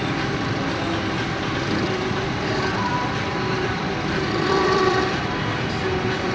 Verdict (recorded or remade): remade